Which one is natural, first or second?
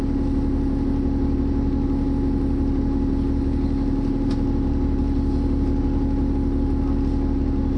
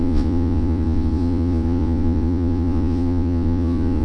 first